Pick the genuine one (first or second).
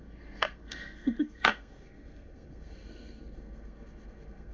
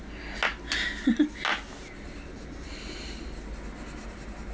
second